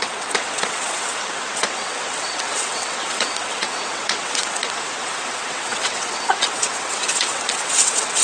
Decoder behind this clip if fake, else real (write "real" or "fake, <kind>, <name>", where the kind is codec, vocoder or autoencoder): fake, vocoder, WaveNeXt